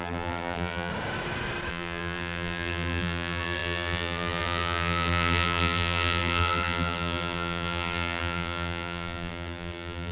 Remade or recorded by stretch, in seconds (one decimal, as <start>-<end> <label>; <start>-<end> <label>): 0.0-0.9 remade; 0.9-1.7 recorded; 1.7-10.1 remade